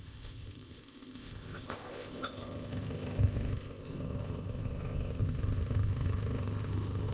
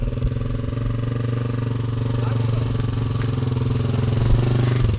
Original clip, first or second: second